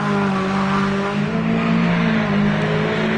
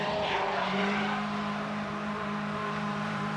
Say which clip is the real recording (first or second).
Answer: first